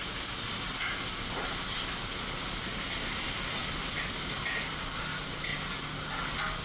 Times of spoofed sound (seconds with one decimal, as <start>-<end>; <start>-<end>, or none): 3.6-5.1